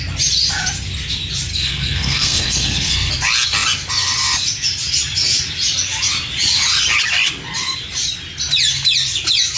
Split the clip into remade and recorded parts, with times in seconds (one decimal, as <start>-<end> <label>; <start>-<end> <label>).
0.0-1.5 recorded; 1.5-3.1 remade; 3.1-9.6 recorded